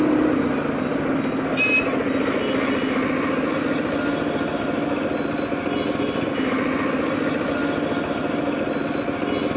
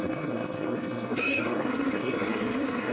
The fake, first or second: second